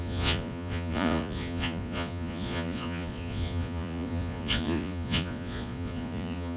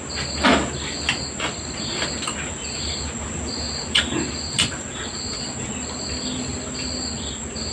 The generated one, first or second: first